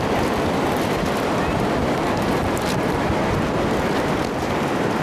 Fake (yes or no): no